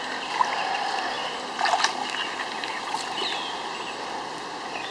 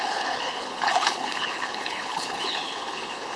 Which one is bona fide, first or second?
first